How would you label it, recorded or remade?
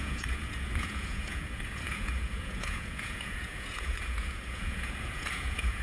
remade